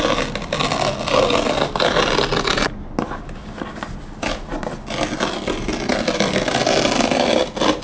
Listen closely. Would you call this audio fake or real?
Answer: real